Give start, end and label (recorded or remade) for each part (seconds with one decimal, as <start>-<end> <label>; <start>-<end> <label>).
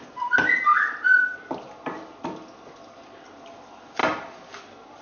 0.0-5.0 recorded